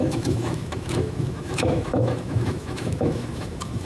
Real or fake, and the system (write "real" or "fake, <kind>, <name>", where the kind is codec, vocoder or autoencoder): fake, autoencoder, DAC-VAE